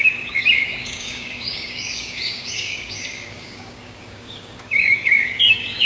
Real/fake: fake